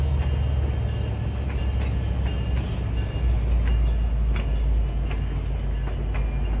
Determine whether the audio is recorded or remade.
recorded